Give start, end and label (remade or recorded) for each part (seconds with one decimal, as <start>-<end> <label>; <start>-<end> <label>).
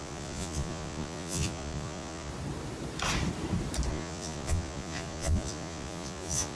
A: 0.0-2.3 remade; 2.3-3.9 recorded; 3.9-6.6 remade